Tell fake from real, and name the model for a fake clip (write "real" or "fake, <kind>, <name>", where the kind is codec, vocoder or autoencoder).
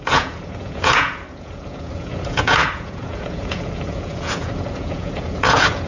fake, vocoder, Vocos